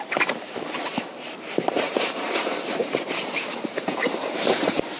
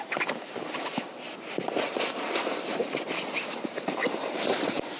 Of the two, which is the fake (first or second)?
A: first